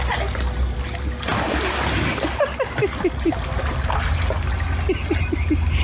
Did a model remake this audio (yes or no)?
no